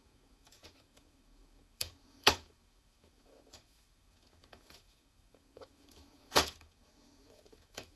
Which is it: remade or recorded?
remade